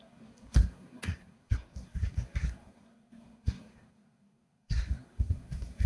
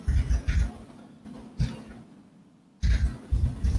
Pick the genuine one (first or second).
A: second